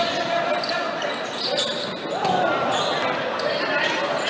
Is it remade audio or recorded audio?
recorded